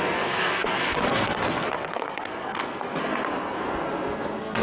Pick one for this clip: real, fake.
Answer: fake